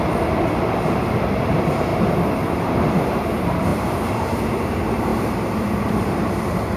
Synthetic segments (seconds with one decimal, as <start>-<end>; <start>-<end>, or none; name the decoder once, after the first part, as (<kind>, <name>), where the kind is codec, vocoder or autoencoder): 0.0-1.9 (vocoder, BigVGAN v2); 2.9-6.8